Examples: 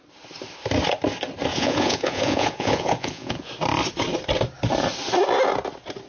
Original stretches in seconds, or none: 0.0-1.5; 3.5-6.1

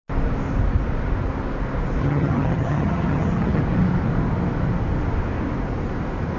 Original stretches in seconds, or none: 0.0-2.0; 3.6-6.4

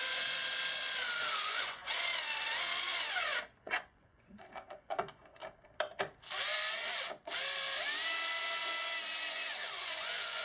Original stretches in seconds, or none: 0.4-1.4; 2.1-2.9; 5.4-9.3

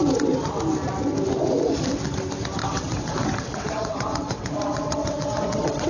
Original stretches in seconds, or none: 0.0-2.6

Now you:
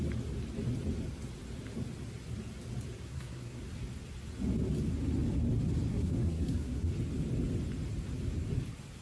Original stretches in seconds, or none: 0.0-3.0; 3.6-5.9; 6.9-9.0

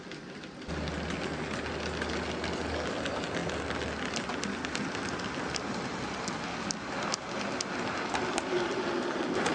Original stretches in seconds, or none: 0.0-9.5